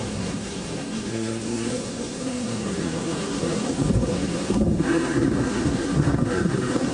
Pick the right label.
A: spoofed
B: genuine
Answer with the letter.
A